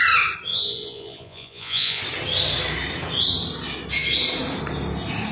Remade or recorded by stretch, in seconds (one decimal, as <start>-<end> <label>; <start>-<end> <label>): 0.0-0.5 recorded; 0.5-2.0 remade; 2.0-5.3 recorded